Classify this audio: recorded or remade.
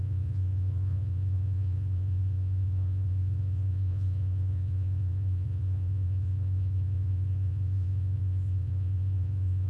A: remade